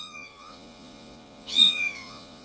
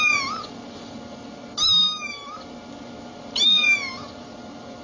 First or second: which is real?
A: second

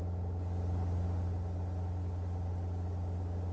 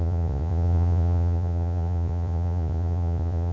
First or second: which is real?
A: first